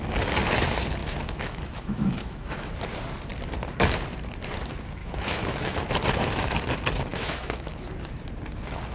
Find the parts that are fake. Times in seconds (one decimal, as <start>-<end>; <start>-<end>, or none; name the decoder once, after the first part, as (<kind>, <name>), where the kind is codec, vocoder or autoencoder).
1.0-2.7 (autoencoder, DAC-VAE); 5.0-5.9; 7.1-7.7